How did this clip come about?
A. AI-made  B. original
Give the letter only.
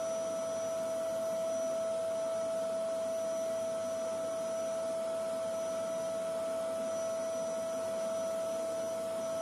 B